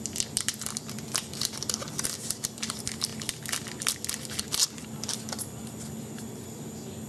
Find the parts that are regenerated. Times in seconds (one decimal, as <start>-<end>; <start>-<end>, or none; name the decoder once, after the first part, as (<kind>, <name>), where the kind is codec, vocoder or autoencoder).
none